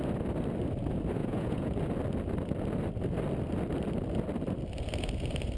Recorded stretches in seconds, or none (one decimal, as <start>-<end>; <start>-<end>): 0.0-1.2; 1.8-5.6